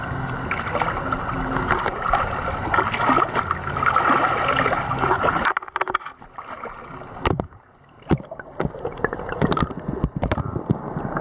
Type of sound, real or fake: real